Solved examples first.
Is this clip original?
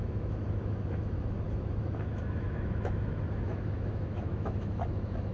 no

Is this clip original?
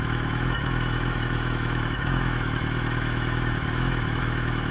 no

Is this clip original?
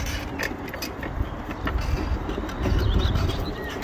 yes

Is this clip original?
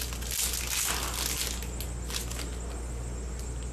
yes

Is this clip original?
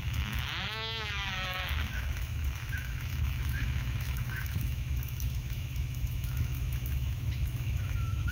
no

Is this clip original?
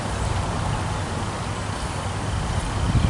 yes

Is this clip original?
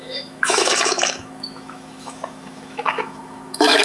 no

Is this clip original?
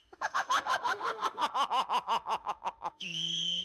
no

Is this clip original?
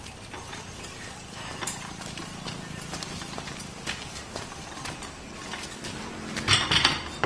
yes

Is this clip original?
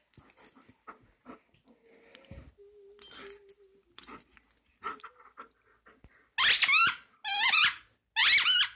yes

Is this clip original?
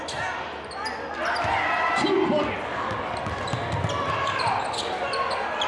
yes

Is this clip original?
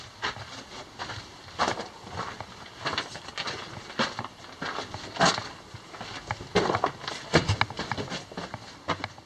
yes